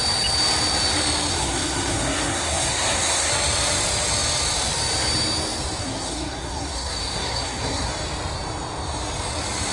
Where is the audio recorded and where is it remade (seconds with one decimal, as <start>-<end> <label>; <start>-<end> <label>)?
0.0-1.3 recorded; 1.3-3.3 remade; 3.3-5.8 recorded; 5.8-7.9 remade; 7.9-9.7 recorded

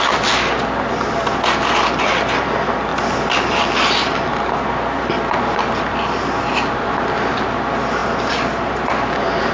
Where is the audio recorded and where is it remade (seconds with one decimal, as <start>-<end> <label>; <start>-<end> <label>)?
0.0-9.5 recorded

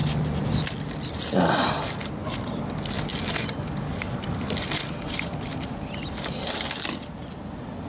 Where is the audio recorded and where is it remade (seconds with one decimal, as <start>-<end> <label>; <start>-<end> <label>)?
0.0-7.9 recorded

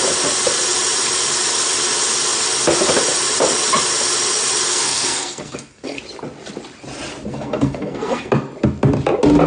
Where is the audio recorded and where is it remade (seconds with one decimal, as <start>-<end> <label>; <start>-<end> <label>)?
0.0-4.7 recorded; 4.7-6.0 remade; 6.0-7.3 recorded; 7.3-8.3 remade; 8.3-9.5 recorded

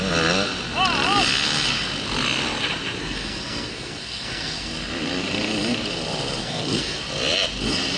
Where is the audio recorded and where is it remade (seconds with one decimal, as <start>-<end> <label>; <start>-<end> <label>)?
0.0-3.0 recorded; 3.0-4.7 remade; 4.7-6.4 recorded; 6.4-7.0 remade; 7.0-8.0 recorded

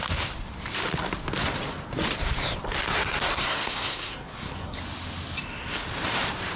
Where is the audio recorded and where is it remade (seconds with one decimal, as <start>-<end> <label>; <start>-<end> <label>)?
0.0-2.9 recorded; 2.9-4.8 remade; 4.8-6.6 recorded

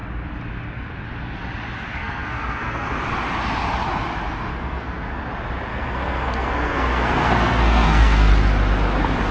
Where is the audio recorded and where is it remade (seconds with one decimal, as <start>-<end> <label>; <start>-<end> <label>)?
0.0-1.9 recorded; 1.9-2.9 remade; 2.9-4.5 recorded; 4.5-5.2 remade; 5.2-5.7 recorded; 5.7-8.3 remade; 8.3-9.3 recorded